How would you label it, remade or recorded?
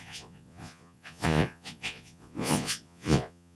remade